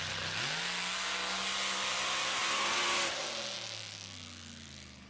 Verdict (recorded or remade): recorded